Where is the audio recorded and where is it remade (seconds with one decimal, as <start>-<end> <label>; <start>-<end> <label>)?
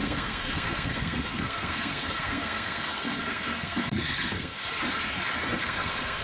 0.0-4.6 remade; 4.6-5.6 recorded; 5.6-6.2 remade